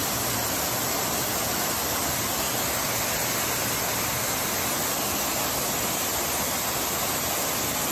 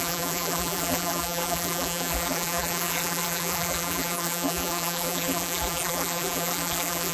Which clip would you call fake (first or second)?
second